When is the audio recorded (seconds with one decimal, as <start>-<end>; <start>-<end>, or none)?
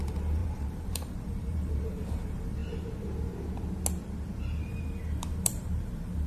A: 2.6-4.7